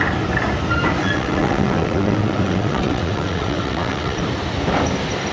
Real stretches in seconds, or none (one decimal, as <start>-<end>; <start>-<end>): 0.0-1.0; 4.2-5.3